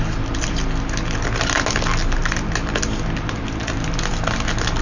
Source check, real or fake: real